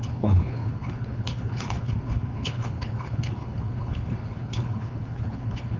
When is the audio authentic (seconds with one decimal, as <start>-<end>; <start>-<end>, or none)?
none